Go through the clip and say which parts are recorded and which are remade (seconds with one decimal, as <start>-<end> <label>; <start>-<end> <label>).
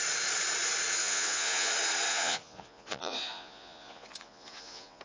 0.0-1.0 recorded; 1.0-1.7 remade; 1.7-2.1 recorded; 2.1-5.0 remade